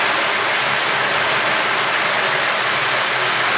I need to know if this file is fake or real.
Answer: real